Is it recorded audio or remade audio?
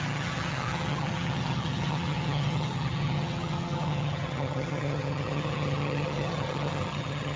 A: remade